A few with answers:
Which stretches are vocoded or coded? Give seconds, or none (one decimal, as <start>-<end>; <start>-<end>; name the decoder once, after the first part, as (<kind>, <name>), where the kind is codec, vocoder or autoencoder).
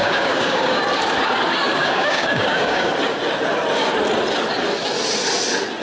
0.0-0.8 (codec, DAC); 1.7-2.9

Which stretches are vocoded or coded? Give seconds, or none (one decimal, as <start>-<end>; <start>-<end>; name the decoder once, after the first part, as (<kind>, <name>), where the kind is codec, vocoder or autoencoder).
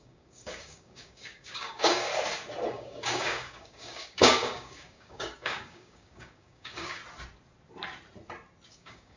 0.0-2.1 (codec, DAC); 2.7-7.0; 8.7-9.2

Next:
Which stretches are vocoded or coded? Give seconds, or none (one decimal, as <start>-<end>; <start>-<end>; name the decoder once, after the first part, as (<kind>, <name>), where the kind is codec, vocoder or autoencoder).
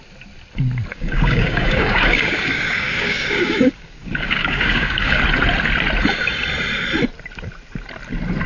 0.9-5.2 (codec, DAC)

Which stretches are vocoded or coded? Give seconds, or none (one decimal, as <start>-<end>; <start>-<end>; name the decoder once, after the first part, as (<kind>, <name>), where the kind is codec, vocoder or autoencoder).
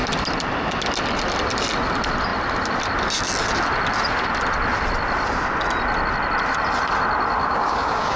7.4-8.2 (codec, DAC)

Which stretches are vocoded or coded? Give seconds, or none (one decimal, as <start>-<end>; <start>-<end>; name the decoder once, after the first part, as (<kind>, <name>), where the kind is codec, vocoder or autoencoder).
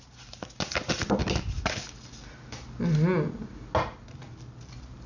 none